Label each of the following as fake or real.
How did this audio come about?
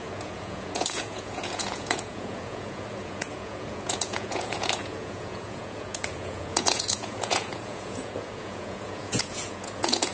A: fake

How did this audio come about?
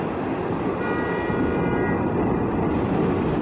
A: real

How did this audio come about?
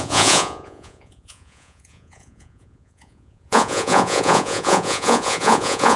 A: fake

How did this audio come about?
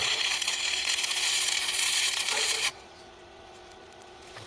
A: fake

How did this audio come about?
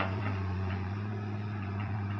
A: fake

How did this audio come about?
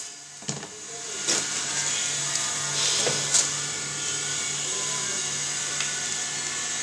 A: real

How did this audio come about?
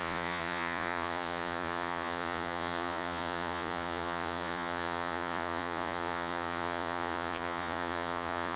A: fake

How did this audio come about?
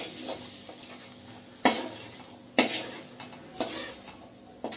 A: real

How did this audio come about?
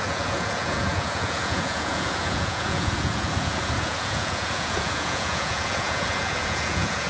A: fake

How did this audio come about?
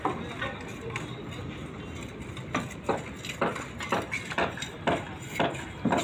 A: real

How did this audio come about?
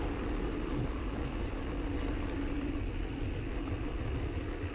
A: real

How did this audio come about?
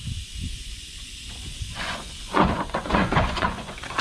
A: fake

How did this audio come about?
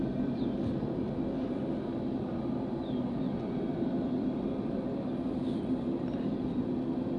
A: real